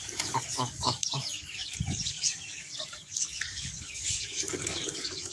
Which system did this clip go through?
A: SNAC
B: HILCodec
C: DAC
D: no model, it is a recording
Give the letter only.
C